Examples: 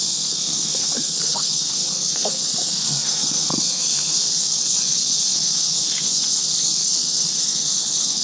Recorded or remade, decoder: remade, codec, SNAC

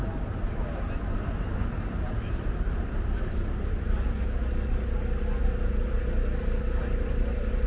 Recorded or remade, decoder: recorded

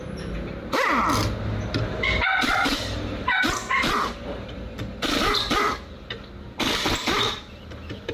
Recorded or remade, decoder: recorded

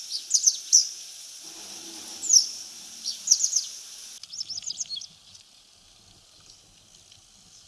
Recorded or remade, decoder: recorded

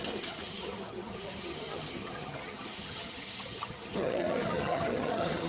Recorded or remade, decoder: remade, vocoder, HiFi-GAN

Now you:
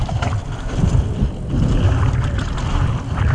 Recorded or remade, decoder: recorded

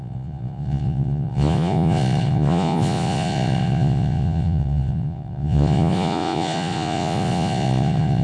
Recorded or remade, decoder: remade, vocoder, Vocos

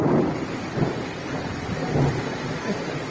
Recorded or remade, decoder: recorded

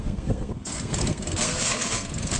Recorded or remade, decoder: remade, codec, SNAC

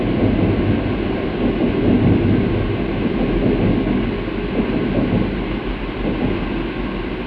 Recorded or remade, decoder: recorded